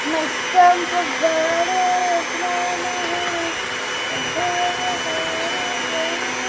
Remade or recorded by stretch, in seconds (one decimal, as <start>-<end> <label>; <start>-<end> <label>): 0.0-6.5 recorded